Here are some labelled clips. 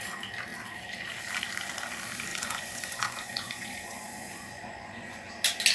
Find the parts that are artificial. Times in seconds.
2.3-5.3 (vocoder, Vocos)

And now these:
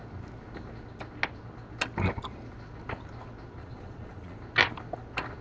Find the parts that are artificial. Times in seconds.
3.6-4.4 (vocoder, Vocos)

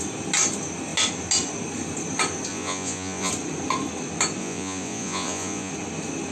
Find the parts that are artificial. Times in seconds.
2.5-3.3 (vocoder, Vocos); 4.4-5.7